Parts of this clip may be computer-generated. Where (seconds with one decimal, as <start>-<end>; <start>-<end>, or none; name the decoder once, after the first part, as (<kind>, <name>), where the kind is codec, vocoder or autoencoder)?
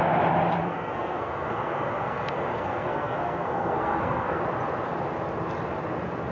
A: 0.6-4.4 (codec, SNAC)